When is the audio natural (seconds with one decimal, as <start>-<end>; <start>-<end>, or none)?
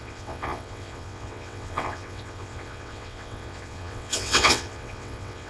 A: none